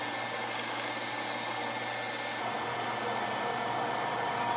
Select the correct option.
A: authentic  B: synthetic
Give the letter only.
A